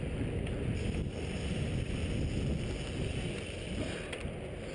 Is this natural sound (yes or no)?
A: yes